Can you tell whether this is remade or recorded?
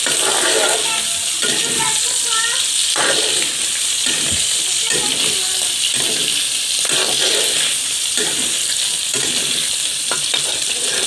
recorded